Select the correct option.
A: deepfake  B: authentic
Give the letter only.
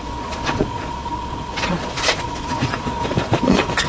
A